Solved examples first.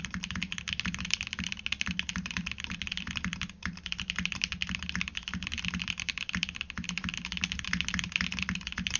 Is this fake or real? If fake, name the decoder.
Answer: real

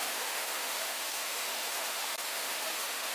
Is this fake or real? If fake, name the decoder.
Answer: fake, autoencoder, DAC-VAE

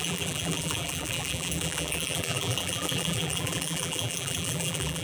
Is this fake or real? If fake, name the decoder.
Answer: fake, vocoder, BigVGAN v2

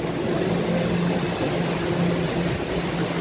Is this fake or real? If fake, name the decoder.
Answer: real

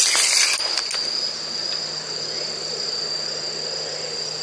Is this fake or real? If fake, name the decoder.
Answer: real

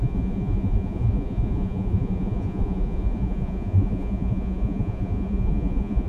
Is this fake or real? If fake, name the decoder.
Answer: fake, vocoder, Vocos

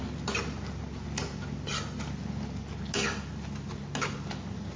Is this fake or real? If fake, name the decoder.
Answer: real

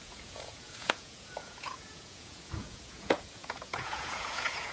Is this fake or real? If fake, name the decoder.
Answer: fake, vocoder, Vocos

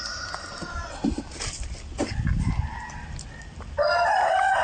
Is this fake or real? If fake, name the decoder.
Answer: real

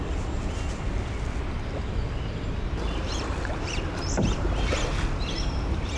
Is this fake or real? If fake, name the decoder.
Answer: real